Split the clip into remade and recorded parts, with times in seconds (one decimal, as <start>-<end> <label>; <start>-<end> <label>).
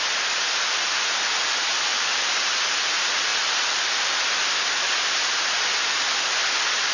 0.0-6.9 recorded